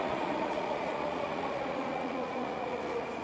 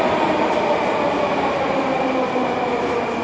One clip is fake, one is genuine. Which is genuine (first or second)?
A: second